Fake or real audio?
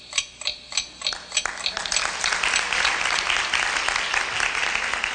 real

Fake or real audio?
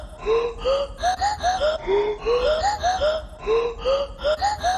real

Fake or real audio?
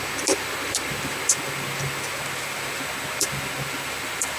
real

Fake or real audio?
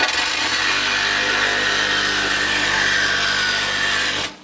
real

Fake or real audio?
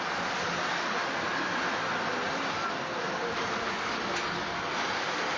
real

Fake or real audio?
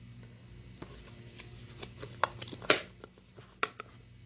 real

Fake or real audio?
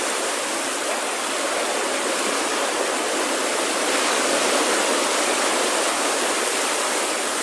fake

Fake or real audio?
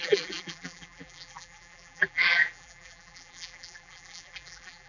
fake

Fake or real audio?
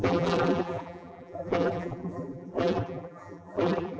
fake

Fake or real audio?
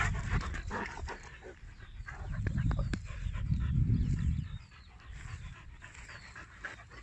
real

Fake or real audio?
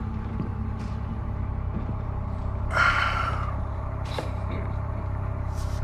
fake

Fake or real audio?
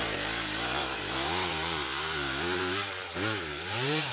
fake